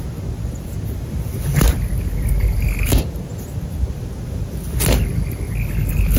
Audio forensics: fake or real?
real